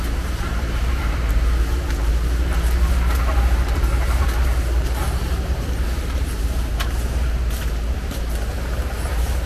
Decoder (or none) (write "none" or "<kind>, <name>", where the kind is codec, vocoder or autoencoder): vocoder, BigVGAN v2